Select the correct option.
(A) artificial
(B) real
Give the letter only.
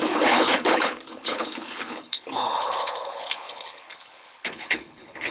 A